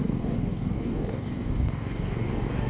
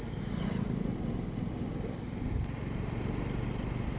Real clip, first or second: second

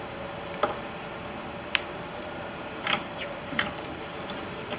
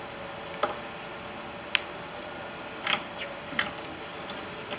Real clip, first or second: second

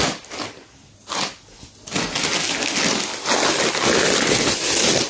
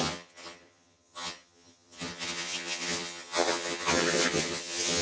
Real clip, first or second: first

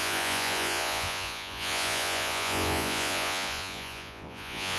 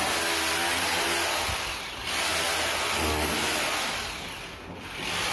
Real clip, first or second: second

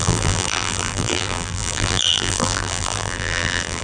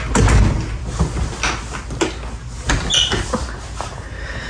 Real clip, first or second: second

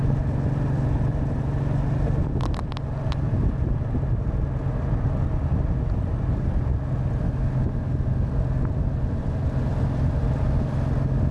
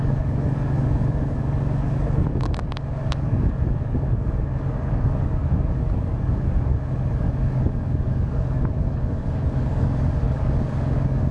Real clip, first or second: first